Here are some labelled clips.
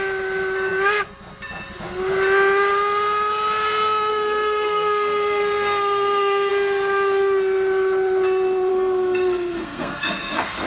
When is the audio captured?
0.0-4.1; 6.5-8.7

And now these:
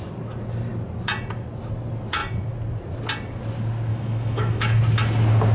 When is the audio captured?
0.0-3.9; 4.8-5.5

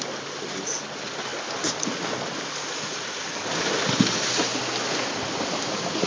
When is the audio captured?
0.0-6.1

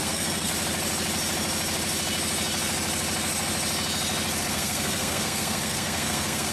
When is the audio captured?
0.5-4.4

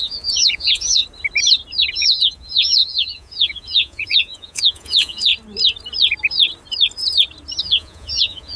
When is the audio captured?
1.0-1.9; 5.3-7.6

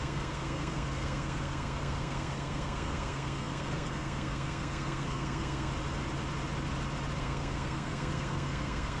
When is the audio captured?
5.7-7.2

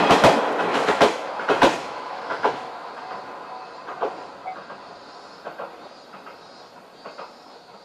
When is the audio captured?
0.0-0.7; 1.3-1.8; 2.9-7.8

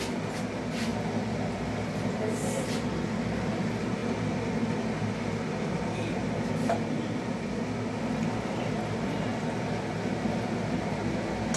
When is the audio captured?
0.0-11.6